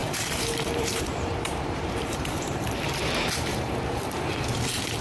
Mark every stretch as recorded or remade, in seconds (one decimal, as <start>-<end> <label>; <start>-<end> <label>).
0.0-3.0 remade; 3.0-3.5 recorded; 3.5-4.6 remade; 4.6-5.0 recorded